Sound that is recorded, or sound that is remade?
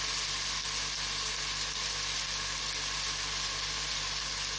recorded